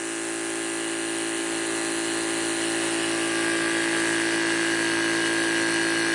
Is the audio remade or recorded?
recorded